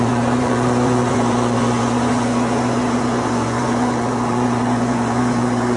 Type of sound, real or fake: fake